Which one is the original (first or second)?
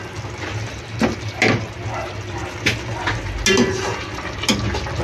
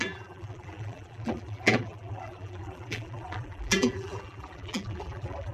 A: first